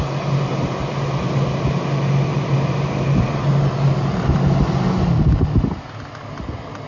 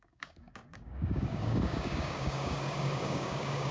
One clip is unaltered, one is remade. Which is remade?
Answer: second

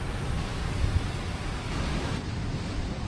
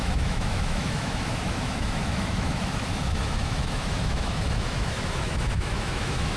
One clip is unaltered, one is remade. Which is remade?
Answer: second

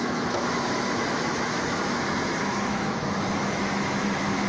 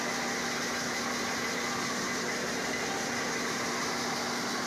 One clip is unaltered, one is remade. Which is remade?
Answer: first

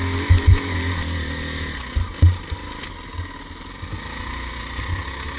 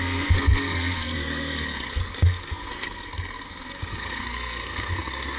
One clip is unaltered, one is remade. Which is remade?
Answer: second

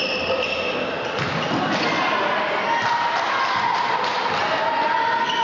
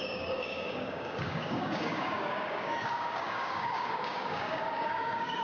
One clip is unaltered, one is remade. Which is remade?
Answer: second